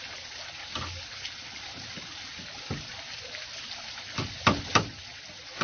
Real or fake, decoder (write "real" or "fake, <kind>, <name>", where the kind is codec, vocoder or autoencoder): real